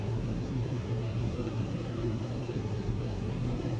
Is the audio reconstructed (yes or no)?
yes